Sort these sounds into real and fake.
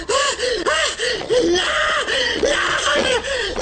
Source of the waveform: fake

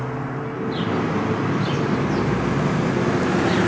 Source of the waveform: real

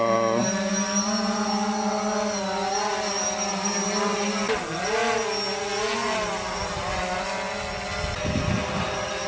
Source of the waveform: real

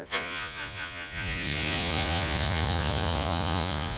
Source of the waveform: fake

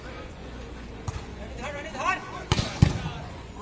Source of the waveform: fake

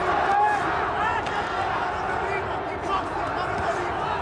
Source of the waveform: real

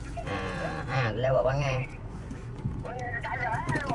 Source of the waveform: fake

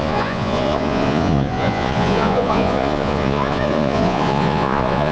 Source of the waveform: fake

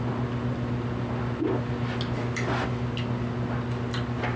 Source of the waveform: real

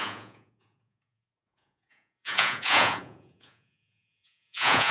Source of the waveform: fake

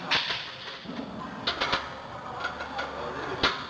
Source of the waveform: real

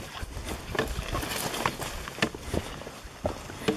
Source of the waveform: real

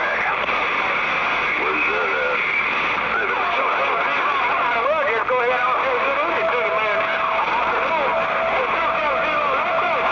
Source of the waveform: real